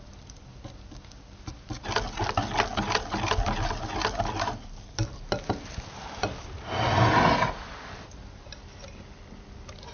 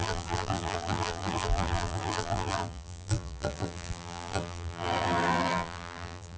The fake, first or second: second